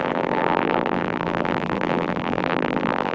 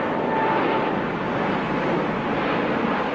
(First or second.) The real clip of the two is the second